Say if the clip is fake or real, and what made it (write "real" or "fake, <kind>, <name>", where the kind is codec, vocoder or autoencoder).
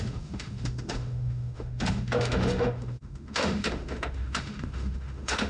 fake, autoencoder, DAC-VAE